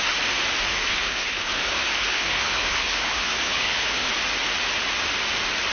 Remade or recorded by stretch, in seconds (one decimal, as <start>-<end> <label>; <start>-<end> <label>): 0.0-0.7 recorded; 0.7-4.1 remade; 4.1-5.7 recorded